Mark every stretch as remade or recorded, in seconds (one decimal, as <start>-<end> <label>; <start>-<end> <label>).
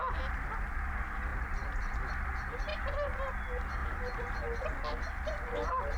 0.0-1.3 recorded; 1.3-2.0 remade; 2.0-2.7 recorded; 2.7-3.3 remade; 3.3-3.8 recorded; 3.8-4.4 remade; 4.4-6.0 recorded